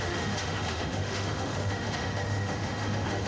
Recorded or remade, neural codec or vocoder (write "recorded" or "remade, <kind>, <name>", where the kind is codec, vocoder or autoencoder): remade, autoencoder, DAC-VAE